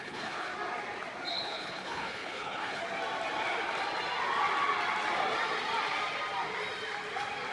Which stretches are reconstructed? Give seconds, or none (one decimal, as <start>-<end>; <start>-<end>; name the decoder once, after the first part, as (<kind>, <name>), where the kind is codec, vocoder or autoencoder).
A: 0.0-0.5 (codec, HILCodec); 1.3-2.8